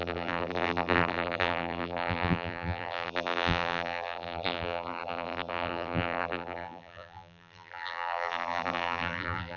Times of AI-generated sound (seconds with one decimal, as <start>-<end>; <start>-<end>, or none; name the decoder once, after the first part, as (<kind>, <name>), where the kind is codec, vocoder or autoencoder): 0.0-9.6 (vocoder, BigVGAN v2)